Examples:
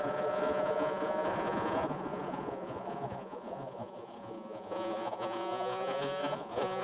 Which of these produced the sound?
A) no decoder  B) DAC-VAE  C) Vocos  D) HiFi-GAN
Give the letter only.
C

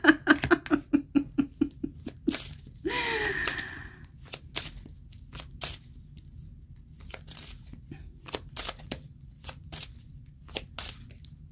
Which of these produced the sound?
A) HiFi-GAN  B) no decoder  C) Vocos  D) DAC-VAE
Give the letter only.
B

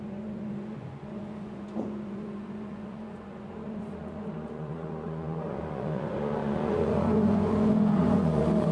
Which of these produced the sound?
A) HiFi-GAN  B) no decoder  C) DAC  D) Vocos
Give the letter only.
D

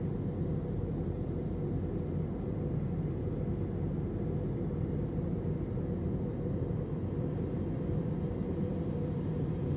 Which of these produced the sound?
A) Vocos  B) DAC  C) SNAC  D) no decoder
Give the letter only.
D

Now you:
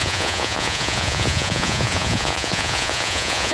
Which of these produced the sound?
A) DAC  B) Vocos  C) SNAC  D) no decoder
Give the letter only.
B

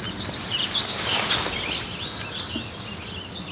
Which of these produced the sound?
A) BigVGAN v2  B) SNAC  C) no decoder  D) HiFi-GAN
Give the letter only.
C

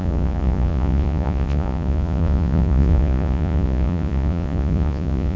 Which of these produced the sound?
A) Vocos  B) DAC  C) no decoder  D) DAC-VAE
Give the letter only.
A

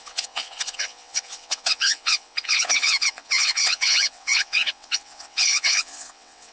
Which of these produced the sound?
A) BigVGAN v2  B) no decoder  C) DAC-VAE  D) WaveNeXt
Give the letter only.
D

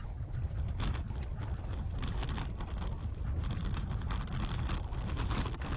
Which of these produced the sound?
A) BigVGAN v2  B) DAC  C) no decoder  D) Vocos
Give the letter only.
C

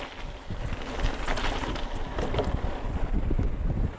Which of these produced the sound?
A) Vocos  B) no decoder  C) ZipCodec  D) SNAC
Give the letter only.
B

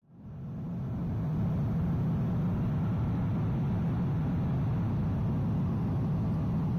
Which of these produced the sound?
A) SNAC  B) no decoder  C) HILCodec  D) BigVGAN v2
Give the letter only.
B